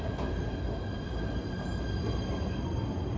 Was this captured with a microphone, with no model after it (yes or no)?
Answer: yes